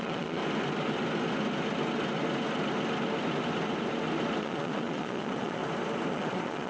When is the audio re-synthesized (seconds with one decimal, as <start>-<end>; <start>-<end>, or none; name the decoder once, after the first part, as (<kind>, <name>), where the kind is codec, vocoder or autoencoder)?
0.0-0.4 (vocoder, Vocos); 4.4-5.6; 6.1-6.7